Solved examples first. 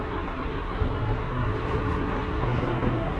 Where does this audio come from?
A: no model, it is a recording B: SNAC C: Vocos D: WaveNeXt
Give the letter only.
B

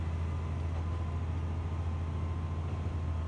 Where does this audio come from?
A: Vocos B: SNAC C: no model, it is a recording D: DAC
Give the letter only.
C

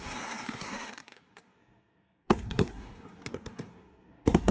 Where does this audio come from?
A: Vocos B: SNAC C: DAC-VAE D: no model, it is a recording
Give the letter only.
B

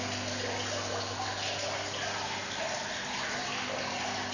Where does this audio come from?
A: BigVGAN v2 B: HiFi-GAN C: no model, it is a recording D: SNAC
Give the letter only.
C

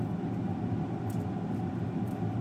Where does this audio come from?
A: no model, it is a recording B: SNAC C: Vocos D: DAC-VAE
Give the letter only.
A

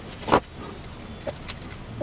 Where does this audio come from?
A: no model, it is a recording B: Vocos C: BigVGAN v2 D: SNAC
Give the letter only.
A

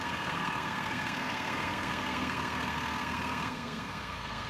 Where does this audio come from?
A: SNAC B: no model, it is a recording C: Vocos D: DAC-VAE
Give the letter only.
A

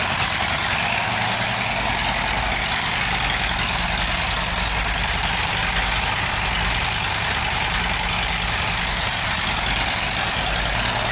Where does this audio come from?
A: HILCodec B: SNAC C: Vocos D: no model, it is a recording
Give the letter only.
D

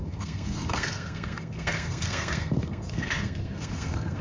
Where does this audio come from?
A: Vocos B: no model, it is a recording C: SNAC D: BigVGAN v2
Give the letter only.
C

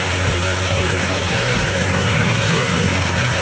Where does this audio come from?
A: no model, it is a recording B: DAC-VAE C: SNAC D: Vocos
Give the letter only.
C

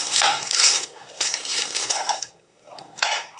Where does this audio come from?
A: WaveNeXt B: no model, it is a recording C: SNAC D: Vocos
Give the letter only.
C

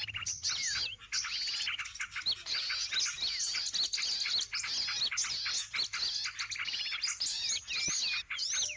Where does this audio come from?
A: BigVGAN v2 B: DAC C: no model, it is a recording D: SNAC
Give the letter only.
C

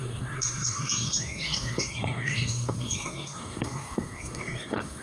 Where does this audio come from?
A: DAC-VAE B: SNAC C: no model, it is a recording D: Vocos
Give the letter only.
B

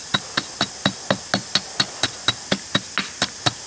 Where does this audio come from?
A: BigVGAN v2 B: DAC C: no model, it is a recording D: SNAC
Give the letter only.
C